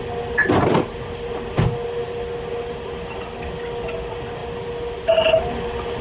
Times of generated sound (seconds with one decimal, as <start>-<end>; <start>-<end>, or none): none